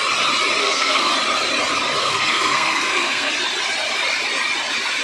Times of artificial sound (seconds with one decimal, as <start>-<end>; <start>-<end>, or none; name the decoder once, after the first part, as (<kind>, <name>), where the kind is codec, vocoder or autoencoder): 0.6-1.1 (codec, SNAC); 2.0-3.3